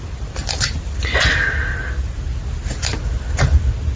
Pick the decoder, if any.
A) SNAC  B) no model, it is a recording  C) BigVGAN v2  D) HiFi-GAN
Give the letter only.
B